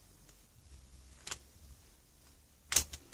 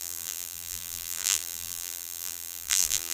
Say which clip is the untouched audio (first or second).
first